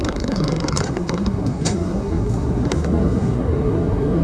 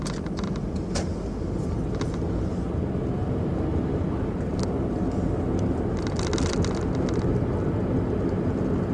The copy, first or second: first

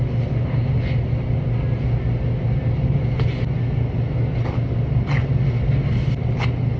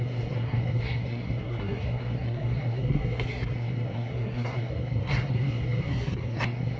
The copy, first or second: second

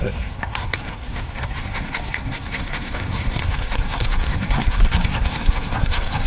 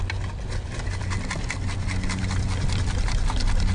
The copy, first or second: first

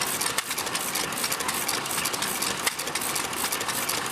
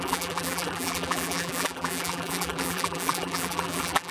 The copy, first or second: second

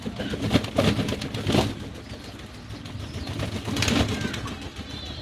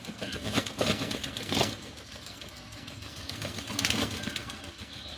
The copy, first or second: second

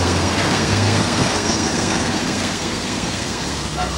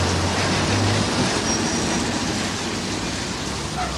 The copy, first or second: first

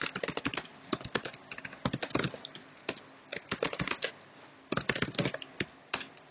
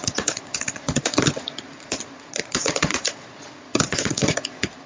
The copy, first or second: second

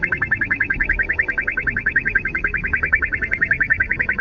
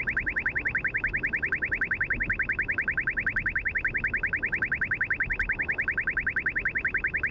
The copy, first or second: first